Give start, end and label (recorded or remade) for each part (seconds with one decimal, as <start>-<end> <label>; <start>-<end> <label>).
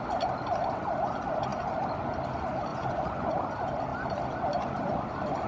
0.0-2.7 recorded; 2.7-3.3 remade; 3.3-5.5 recorded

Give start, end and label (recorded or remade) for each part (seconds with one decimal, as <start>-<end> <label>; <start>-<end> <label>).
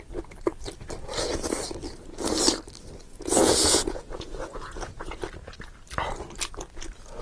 0.0-3.1 recorded; 3.1-5.2 remade; 5.2-7.2 recorded